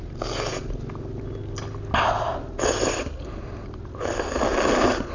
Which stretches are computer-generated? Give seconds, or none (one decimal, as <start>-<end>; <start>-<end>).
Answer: none